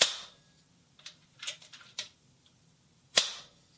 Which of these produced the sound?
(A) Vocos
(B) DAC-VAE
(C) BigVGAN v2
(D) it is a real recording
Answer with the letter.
C